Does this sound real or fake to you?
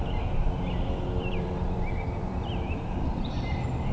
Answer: fake